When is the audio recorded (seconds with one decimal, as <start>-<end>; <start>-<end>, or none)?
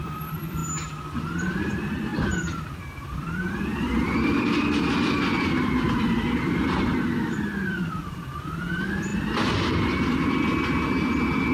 0.6-1.2